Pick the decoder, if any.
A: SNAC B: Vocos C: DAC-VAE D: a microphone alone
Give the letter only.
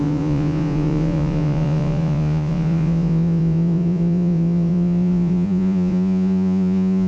B